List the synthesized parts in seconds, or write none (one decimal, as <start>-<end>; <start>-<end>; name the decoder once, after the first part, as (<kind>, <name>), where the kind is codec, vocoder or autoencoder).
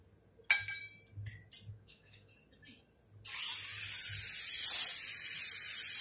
1.7-2.3 (codec, DAC)